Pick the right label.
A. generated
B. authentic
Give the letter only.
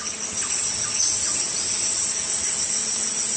A